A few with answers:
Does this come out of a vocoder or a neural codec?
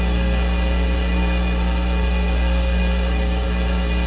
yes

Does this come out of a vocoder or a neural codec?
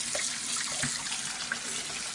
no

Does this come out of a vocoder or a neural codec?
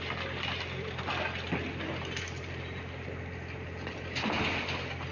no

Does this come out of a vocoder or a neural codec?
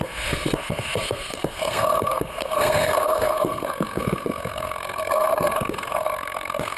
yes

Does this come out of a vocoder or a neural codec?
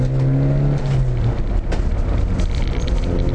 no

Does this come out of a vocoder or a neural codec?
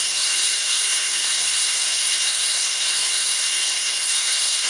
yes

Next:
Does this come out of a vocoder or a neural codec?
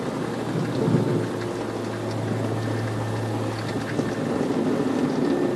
no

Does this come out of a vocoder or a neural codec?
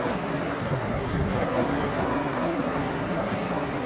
yes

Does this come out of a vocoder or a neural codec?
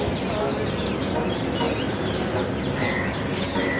no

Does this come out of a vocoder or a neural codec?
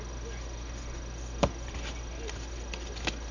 no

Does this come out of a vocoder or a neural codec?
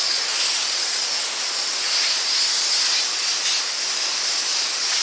no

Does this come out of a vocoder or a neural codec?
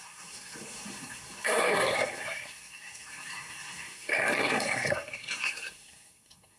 yes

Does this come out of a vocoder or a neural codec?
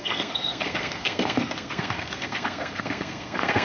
yes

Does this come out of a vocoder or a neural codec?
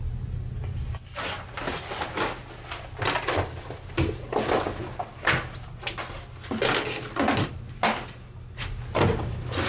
no